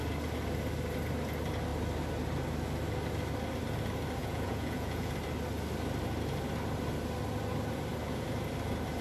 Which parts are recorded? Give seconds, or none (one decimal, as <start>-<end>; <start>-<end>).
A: 0.0-4.2; 5.1-9.0